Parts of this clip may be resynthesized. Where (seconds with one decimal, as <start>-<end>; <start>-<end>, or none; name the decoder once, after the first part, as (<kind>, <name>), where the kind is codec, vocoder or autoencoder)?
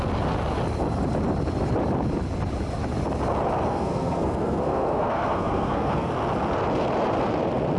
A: 3.7-6.1 (codec, SNAC)